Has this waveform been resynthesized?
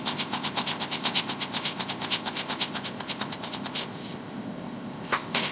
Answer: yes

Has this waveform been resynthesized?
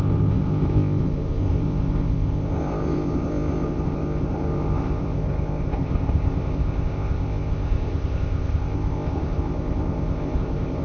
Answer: yes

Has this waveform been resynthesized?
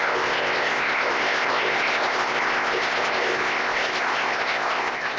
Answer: yes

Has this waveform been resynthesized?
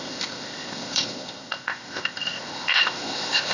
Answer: yes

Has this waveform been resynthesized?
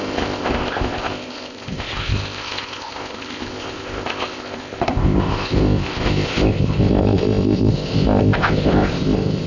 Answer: yes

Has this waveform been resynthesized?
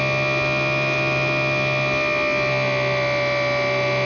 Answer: no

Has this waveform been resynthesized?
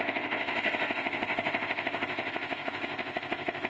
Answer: yes